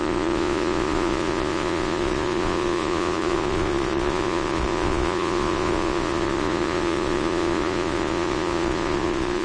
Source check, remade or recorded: remade